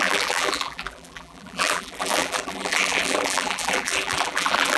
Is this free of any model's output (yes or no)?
no